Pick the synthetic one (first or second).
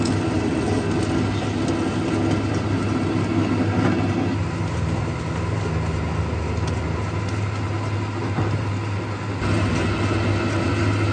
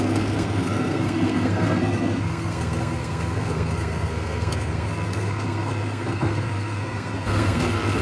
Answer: second